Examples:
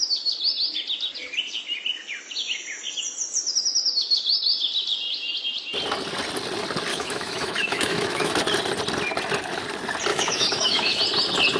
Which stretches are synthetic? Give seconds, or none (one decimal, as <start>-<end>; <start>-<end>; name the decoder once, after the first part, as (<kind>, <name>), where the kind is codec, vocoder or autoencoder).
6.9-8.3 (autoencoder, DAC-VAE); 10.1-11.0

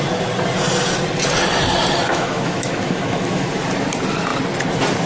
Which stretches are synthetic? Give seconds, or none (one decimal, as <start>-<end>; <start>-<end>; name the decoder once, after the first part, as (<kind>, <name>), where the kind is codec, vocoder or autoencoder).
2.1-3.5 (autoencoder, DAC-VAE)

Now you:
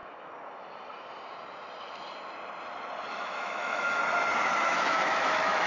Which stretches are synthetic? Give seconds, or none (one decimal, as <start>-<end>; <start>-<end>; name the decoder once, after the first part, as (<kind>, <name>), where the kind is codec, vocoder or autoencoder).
3.1-4.0 (autoencoder, DAC-VAE); 4.6-5.7

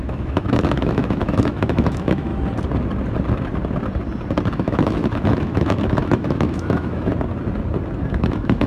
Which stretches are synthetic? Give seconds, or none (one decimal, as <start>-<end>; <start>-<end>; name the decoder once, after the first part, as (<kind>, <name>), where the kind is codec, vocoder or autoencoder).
0.0-2.3 (autoencoder, DAC-VAE); 4.5-7.1; 8.1-8.7

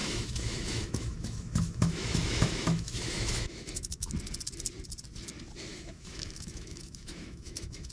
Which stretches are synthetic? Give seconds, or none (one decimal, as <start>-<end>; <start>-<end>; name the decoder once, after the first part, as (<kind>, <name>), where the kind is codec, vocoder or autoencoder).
0.0-4.1 (autoencoder, DAC-VAE); 5.7-7.9

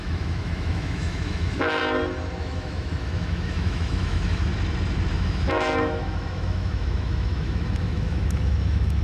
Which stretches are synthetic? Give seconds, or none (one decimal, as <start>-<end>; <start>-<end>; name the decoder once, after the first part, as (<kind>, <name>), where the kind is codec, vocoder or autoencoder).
0.0-1.8 (autoencoder, DAC-VAE); 2.4-4.5; 5.1-9.0

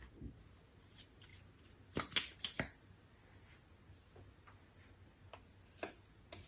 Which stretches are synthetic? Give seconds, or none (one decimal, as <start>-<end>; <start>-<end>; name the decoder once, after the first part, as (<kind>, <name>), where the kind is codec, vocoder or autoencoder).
none